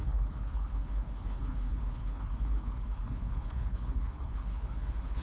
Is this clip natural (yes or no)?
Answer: no